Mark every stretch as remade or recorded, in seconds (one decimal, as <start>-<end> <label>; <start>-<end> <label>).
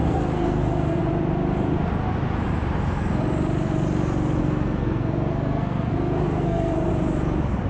0.0-1.0 remade; 1.0-4.4 recorded; 4.4-6.9 remade; 6.9-7.7 recorded